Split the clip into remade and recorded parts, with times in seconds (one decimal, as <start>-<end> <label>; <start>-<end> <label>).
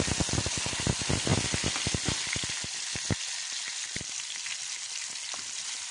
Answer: 0.0-5.9 recorded